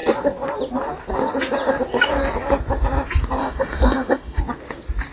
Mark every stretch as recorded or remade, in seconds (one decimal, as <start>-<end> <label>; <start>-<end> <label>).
0.0-3.4 recorded; 3.4-4.4 remade; 4.4-5.1 recorded